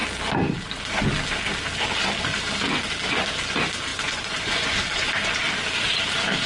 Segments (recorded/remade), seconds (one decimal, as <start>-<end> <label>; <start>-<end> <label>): 0.0-3.9 recorded; 3.9-5.1 remade; 5.1-6.5 recorded